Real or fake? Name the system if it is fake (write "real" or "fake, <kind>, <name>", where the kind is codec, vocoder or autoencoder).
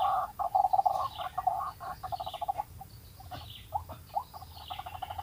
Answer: real